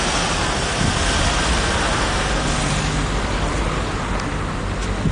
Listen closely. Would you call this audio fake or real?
real